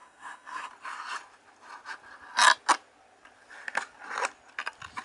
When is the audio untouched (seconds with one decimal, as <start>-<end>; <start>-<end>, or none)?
0.7-5.0